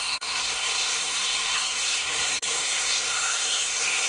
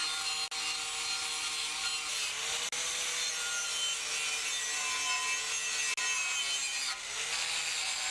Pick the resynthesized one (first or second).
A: first